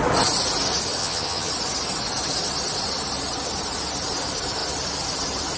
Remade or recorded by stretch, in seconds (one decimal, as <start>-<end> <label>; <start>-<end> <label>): 0.0-1.0 recorded; 1.0-1.5 remade; 1.5-5.6 recorded